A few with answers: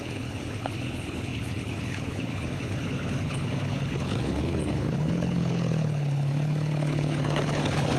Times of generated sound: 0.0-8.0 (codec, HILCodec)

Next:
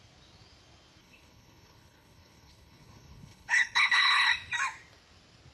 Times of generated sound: 1.0-4.3 (codec, HILCodec)

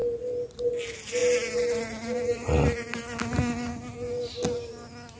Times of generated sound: none